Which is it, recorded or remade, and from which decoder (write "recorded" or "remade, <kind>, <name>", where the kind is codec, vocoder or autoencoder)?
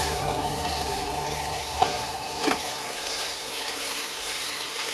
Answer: remade, codec, SNAC